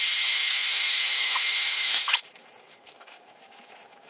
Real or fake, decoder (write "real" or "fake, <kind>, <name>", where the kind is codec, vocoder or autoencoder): fake, autoencoder, DAC-VAE